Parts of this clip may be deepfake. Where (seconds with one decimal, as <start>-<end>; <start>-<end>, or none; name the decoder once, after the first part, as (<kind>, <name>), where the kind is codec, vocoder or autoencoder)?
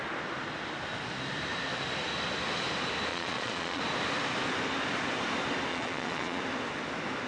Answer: 3.1-3.8 (vocoder, Vocos); 5.7-6.4